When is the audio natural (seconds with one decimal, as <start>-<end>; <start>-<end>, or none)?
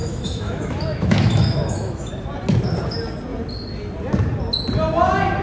2.1-5.4